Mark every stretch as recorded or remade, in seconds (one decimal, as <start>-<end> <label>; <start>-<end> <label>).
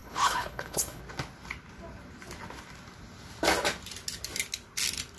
0.0-1.0 remade; 1.0-5.2 recorded